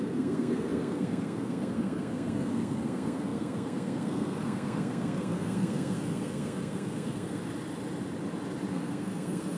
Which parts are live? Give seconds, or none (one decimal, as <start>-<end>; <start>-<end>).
7.4-8.7